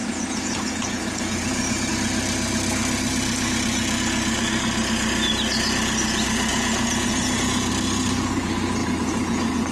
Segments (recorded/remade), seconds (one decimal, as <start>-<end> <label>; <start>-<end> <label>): 0.0-1.9 remade; 1.9-6.5 recorded; 6.5-7.7 remade; 7.7-8.8 recorded; 8.8-9.7 remade